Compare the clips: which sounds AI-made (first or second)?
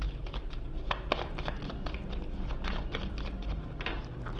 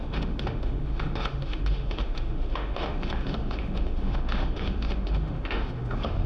second